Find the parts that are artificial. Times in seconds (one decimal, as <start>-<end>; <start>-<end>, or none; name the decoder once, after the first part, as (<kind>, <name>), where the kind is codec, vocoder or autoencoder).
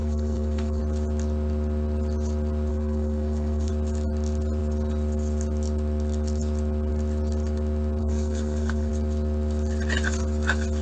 0.0-0.8 (codec, SNAC); 2.7-3.7; 8.0-8.9